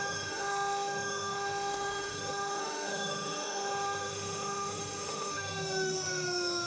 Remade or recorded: remade